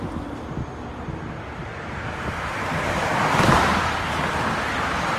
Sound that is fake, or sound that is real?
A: real